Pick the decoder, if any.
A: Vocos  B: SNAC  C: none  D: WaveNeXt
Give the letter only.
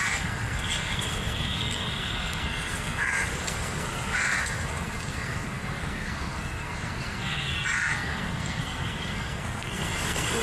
B